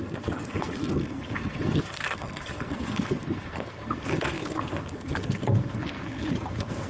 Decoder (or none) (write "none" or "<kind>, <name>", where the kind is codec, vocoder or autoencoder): codec, SNAC